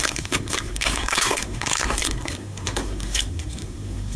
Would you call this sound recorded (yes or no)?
no